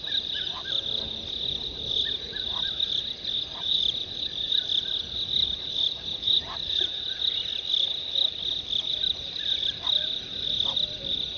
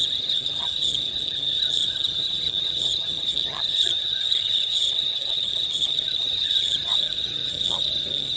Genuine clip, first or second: first